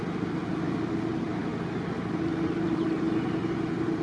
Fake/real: real